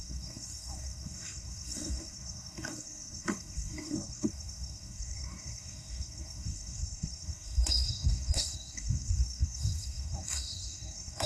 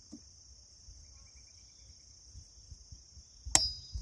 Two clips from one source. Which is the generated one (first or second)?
first